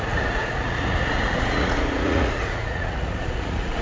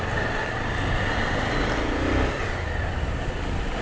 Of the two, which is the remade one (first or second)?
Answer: first